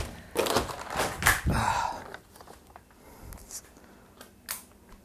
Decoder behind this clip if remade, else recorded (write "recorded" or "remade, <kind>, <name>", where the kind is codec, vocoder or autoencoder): recorded